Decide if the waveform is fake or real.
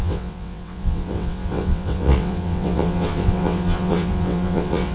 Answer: fake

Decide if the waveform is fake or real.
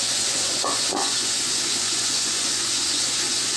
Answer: fake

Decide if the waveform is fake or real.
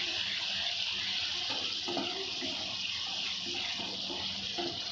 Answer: real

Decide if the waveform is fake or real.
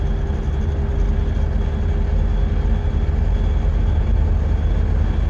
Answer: real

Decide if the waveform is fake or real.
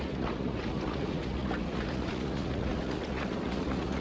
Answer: fake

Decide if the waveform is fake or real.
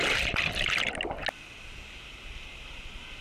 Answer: real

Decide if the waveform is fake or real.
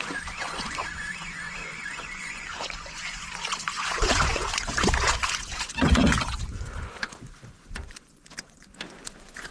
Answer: fake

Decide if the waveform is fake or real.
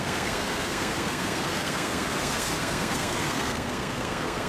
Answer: fake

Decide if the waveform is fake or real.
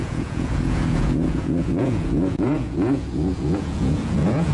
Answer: fake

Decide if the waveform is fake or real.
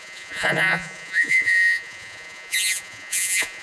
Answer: fake